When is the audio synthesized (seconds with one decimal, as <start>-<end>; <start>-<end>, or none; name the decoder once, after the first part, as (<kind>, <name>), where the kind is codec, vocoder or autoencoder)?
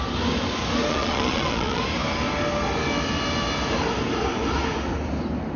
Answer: 0.9-1.8 (vocoder, Vocos)